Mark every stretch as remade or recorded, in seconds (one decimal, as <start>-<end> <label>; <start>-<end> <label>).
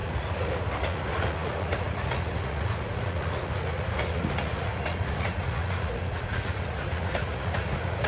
0.0-8.1 remade